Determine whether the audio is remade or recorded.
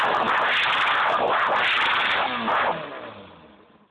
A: recorded